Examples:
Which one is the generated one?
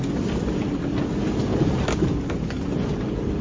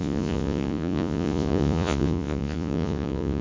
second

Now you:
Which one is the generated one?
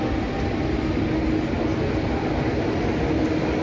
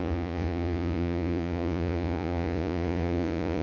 second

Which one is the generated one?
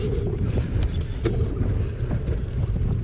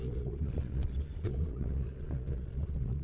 second